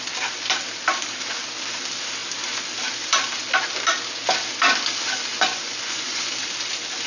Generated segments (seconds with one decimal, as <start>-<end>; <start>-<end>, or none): 5.3-6.3